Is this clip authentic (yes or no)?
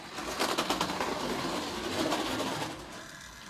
yes